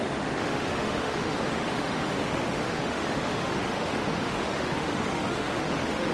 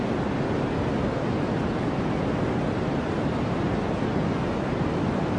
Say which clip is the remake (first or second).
first